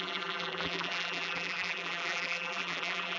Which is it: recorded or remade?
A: remade